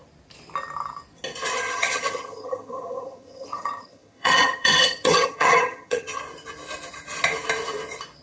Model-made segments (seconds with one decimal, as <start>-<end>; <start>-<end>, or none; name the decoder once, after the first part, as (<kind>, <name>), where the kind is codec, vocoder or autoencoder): 1.5-6.2 (vocoder, HiFi-GAN)